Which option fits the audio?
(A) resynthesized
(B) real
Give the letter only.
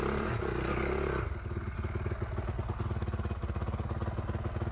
B